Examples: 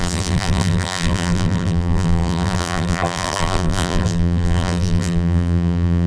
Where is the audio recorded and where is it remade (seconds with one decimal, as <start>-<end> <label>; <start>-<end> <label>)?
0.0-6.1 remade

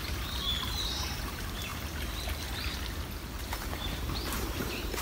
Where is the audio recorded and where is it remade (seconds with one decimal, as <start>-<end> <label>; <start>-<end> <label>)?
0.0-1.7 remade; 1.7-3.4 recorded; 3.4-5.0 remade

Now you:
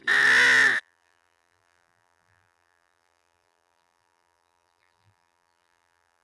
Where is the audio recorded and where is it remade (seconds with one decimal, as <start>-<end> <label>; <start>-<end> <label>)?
0.0-0.8 recorded; 0.8-6.2 remade

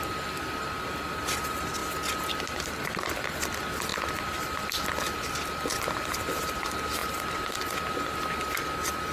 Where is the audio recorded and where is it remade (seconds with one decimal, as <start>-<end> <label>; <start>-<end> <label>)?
0.0-9.1 recorded

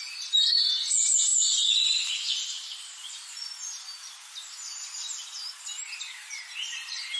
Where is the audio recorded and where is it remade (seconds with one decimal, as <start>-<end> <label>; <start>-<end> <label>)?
0.0-1.3 remade; 1.3-1.8 recorded; 1.8-2.9 remade; 2.9-6.0 recorded; 6.0-7.2 remade

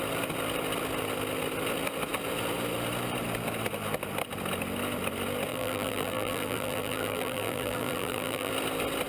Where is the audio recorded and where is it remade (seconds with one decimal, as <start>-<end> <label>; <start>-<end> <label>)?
0.0-5.5 recorded; 5.5-8.5 remade; 8.5-9.1 recorded

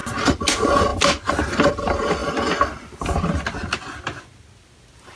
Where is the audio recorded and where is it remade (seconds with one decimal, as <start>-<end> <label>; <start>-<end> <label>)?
0.0-5.2 recorded